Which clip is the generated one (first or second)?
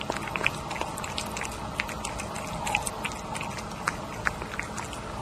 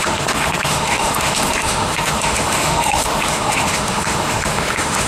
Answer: second